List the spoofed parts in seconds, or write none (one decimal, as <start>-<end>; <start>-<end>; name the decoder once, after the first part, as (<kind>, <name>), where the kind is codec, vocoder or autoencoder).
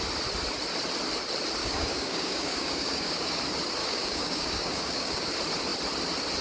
1.6-3.4 (codec, DAC); 3.8-5.3